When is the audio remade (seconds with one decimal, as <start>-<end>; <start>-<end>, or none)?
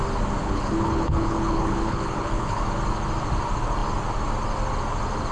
0.4-2.6